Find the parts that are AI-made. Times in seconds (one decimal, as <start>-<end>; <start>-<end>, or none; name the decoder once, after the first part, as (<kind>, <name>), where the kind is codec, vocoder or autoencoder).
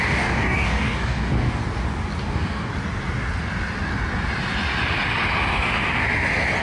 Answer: 0.0-1.6 (codec, DAC); 2.2-2.7